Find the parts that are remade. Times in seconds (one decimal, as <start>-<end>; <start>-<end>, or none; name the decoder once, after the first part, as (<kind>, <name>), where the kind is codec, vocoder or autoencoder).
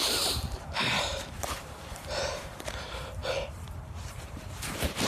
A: 0.0-3.2 (vocoder, BigVGAN v2); 4.1-5.1